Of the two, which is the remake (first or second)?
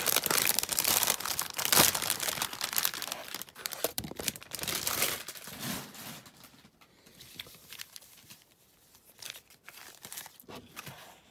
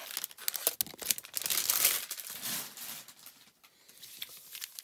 first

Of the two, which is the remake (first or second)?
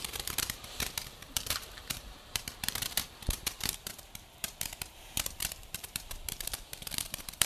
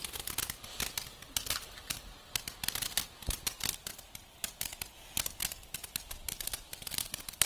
first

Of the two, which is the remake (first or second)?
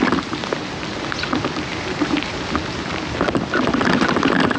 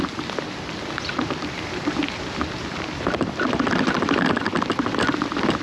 second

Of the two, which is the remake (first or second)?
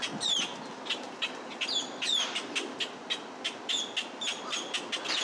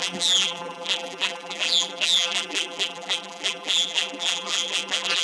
second